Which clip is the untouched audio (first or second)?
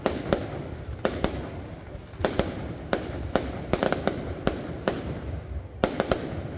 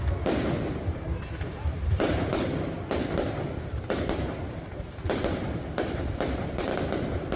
first